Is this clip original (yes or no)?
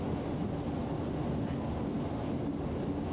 yes